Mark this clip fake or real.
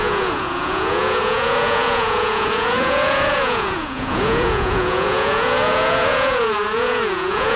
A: fake